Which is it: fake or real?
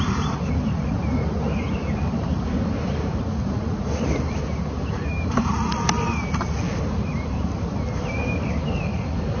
fake